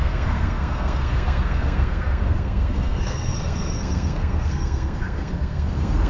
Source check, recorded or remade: remade